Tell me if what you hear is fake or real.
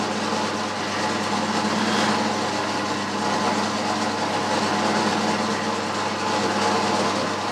real